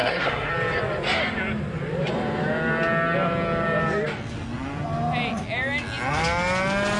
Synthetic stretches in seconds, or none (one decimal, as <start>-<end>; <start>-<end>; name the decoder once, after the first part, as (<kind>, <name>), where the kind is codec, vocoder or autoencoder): 0.0-0.5 (codec, SNAC)